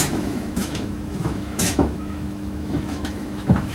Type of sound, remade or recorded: remade